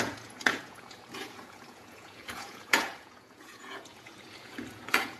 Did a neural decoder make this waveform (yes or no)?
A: yes